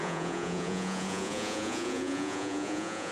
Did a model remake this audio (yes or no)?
yes